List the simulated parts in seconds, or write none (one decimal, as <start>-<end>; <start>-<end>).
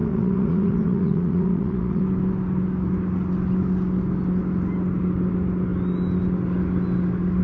0.0-2.0